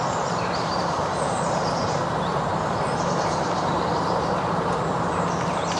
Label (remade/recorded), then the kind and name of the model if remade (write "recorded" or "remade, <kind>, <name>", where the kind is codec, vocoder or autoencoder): remade, vocoder, BigVGAN v2